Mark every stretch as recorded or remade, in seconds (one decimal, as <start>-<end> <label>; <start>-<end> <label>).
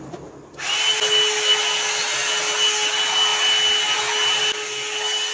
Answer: 0.0-5.3 recorded